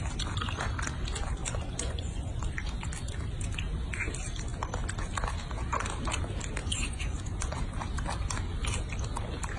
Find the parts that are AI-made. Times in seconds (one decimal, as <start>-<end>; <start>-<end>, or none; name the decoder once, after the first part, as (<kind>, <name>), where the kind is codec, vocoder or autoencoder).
1.4-2.5 (vocoder, Vocos); 6.6-7.6